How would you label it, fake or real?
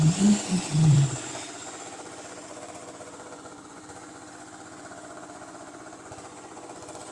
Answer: fake